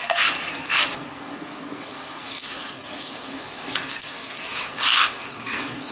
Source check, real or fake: fake